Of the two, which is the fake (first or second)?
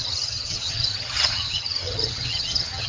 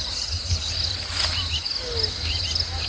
first